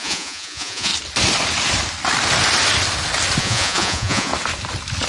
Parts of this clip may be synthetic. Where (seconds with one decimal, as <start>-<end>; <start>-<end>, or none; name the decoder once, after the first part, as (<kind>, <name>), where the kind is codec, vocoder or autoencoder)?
0.0-0.9 (vocoder, Vocos); 3.4-4.3